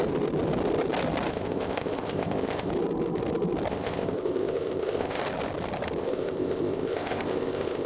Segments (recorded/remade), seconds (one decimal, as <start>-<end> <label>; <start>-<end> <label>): 0.0-1.3 recorded; 1.3-2.7 remade; 2.7-3.7 recorded; 3.7-5.2 remade; 5.2-6.0 recorded; 6.0-7.9 remade